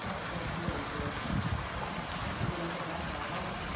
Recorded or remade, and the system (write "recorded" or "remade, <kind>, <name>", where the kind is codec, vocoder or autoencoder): recorded